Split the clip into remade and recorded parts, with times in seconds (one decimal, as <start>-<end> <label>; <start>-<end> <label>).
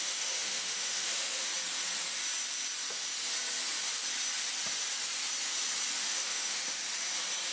0.0-1.5 remade; 1.5-6.0 recorded; 6.0-6.8 remade; 6.8-7.5 recorded